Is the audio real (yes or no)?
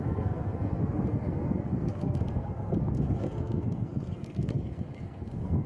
no